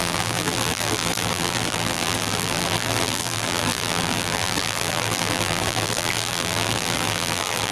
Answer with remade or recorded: remade